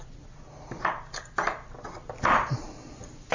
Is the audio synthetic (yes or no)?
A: no